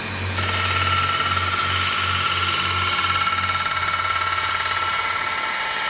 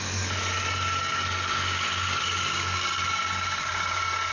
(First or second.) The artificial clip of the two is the second